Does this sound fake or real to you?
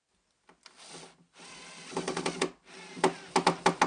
real